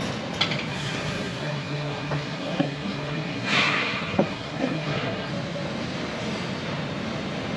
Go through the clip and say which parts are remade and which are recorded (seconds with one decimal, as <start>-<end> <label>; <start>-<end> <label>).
0.0-0.7 recorded; 0.7-5.3 remade; 5.3-7.6 recorded